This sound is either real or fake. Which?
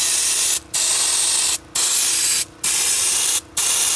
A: real